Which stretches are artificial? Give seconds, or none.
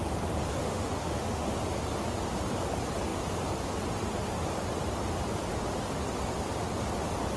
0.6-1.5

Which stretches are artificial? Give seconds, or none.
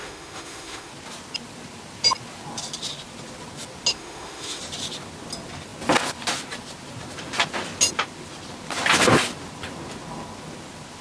0.0-0.9; 3.9-4.6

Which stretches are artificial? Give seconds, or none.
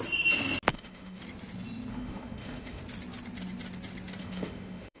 0.7-1.2; 1.9-2.8; 4.2-5.0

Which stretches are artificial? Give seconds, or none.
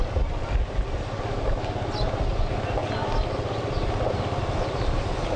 none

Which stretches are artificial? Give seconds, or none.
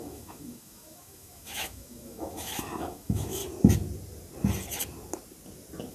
0.0-3.4